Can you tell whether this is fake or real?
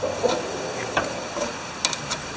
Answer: real